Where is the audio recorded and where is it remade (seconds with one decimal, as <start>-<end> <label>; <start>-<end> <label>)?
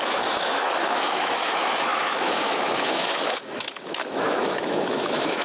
0.0-5.4 remade